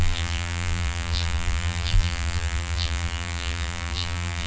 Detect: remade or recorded remade